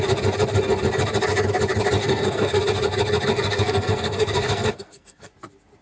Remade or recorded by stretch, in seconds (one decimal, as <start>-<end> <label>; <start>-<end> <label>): 0.0-2.0 recorded; 2.0-2.6 remade; 2.6-3.3 recorded; 3.3-5.3 remade; 5.3-5.8 recorded